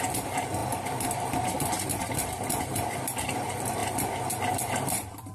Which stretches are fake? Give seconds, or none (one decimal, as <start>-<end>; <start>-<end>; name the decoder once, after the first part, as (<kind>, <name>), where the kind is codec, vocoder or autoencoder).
0.0-3.8 (vocoder, BigVGAN v2); 4.5-5.3